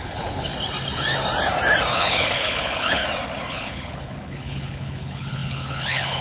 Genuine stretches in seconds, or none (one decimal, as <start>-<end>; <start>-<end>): 0.5-1.9; 3.0-3.5